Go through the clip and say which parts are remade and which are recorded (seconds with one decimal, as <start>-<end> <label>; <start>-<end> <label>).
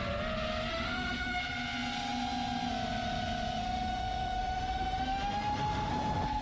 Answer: 0.0-0.7 recorded; 0.7-1.4 remade; 1.4-3.6 recorded; 3.6-5.9 remade; 5.9-6.4 recorded